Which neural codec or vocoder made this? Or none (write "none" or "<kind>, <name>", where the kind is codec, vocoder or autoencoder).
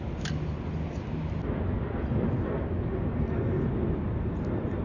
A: none